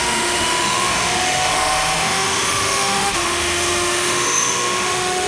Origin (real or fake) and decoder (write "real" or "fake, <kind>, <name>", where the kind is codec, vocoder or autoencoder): fake, autoencoder, DAC-VAE